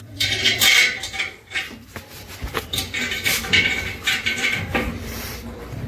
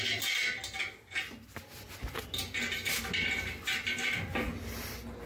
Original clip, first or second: second